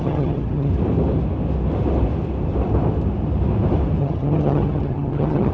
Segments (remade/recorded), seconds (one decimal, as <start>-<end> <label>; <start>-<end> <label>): 0.0-0.7 remade; 0.7-4.0 recorded; 4.0-5.5 remade